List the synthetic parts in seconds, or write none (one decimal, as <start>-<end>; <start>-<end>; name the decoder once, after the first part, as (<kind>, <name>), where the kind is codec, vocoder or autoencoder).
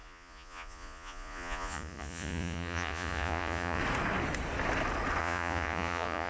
0.0-3.8 (vocoder, Vocos); 5.2-6.3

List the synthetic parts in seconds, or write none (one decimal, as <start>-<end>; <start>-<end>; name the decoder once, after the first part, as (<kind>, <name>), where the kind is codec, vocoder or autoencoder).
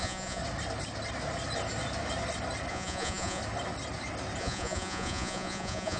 0.0-0.4 (vocoder, Vocos); 2.7-3.4; 4.4-6.0